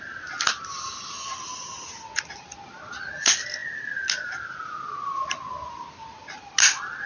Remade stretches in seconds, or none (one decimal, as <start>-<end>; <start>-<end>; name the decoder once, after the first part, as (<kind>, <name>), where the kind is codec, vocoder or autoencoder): none